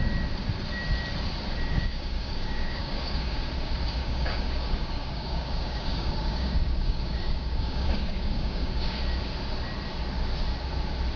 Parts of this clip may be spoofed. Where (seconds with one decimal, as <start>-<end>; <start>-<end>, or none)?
1.7-3.4; 4.0-9.0

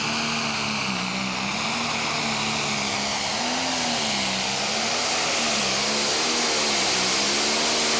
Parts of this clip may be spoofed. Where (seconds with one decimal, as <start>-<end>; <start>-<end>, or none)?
none

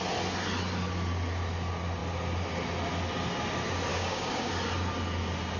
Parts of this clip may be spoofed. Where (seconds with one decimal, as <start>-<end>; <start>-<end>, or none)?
3.9-4.5